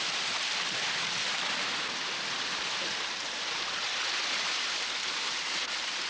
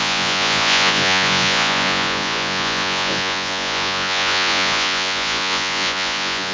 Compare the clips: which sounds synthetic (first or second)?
second